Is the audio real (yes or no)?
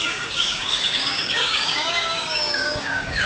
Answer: no